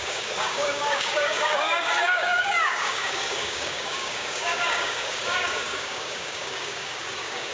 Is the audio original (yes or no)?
no